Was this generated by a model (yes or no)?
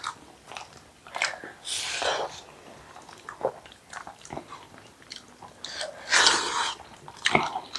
no